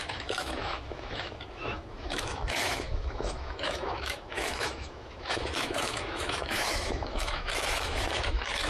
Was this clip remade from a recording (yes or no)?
yes